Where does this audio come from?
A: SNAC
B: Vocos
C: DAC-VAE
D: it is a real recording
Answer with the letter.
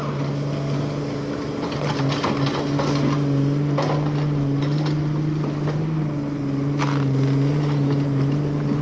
D